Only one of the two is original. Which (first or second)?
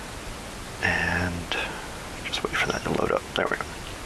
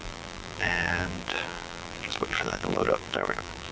first